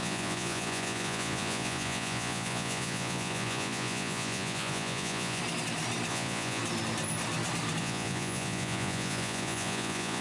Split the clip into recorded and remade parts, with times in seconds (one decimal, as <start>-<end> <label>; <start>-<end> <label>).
0.0-5.4 remade; 5.4-6.1 recorded; 6.1-6.6 remade; 6.6-7.8 recorded; 7.8-10.2 remade